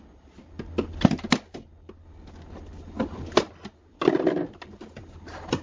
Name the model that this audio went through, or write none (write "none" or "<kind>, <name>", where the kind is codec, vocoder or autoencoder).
none